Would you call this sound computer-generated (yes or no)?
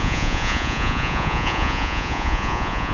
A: yes